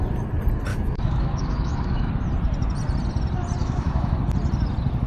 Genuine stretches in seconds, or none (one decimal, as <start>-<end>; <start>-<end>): 0.0-0.7; 2.1-3.6; 4.2-5.1